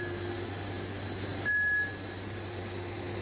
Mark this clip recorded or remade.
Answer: recorded